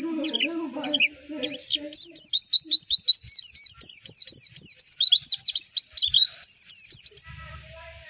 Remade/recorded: recorded